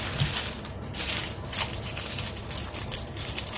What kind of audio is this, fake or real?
real